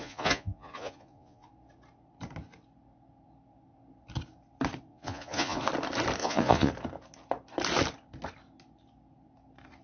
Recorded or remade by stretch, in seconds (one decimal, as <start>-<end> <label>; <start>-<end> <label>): 0.0-1.5 remade; 1.5-4.9 recorded; 4.9-5.6 remade; 5.6-6.2 recorded; 6.2-6.7 remade; 6.7-9.8 recorded